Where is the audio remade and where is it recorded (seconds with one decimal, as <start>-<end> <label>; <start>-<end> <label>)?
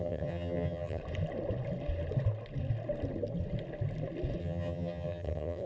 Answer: 0.0-1.0 remade; 1.0-4.4 recorded; 4.4-5.7 remade